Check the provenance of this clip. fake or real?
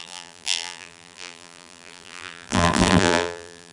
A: fake